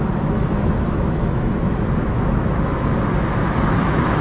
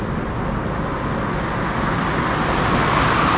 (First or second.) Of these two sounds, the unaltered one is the second